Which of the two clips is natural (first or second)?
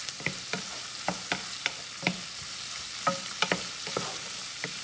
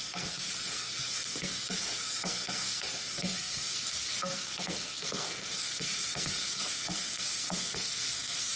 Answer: first